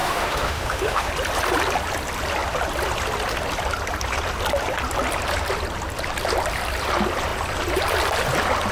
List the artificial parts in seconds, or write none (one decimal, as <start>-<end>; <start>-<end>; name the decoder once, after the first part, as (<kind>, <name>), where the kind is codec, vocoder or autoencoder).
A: 0.0-1.1 (autoencoder, DAC-VAE)